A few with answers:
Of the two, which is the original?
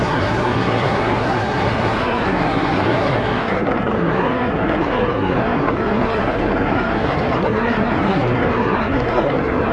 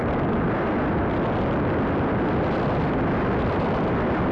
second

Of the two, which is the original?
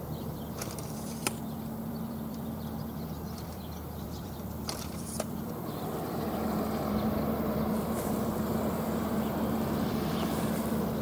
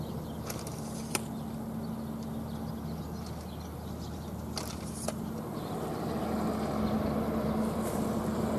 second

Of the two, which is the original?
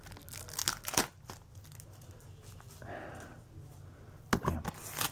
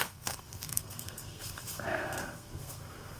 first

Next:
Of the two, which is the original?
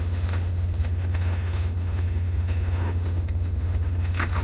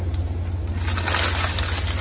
second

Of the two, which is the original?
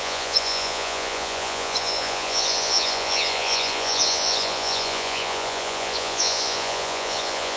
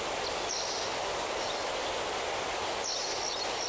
second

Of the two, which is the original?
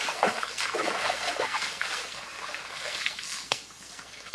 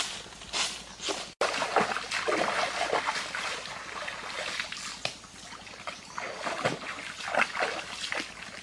second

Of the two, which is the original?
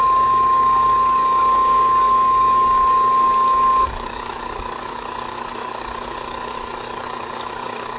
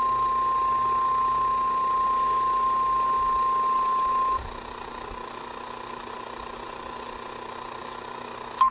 second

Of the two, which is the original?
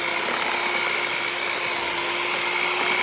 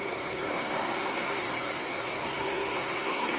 first